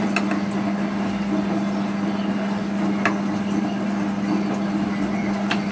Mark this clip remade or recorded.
recorded